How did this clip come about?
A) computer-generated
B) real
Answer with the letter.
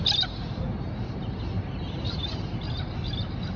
B